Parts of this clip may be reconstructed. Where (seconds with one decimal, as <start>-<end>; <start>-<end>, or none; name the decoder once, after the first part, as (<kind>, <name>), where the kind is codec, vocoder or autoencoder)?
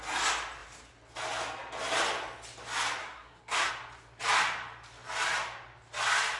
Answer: 3.0-3.7 (codec, SNAC)